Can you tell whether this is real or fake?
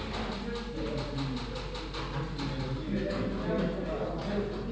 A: real